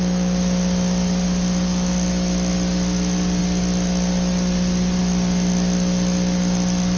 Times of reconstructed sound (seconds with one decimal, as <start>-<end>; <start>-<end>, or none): none